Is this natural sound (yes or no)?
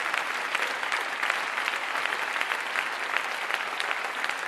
yes